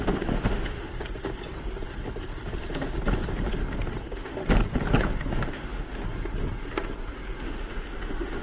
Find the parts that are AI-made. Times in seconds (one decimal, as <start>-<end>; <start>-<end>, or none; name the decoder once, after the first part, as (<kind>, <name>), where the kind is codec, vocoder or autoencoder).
0.0-0.9 (autoencoder, DAC-VAE); 4.0-4.4; 5.4-6.0; 7.4-8.4